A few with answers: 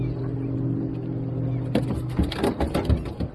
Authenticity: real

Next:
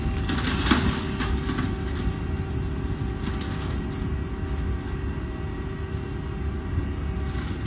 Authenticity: real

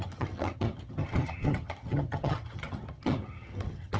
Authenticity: fake